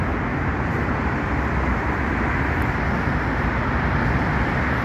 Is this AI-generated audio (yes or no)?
no